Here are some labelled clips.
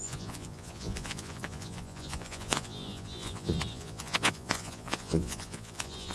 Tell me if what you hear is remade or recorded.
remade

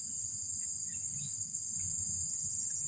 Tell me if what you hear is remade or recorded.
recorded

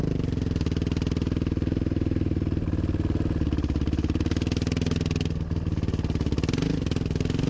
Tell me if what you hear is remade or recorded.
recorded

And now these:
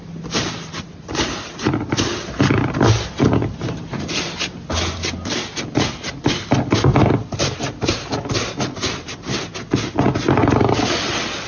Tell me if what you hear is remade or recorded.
recorded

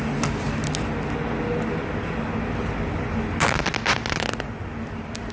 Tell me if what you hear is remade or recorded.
recorded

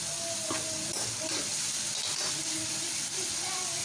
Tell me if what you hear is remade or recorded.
recorded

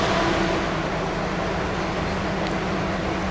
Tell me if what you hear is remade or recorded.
recorded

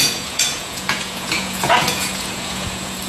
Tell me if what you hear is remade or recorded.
remade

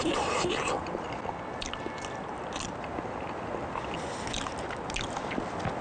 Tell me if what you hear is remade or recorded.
recorded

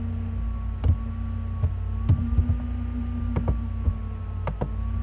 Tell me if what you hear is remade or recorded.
recorded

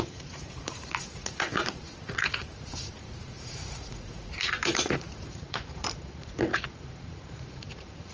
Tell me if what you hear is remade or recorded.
remade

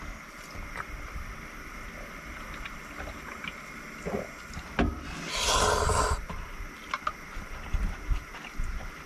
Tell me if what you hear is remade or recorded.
recorded